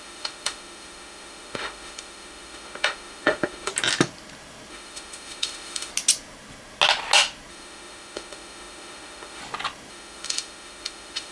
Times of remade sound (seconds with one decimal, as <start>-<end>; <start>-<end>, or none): 0.0-3.7; 4.7-5.9; 7.5-9.4; 9.9-11.3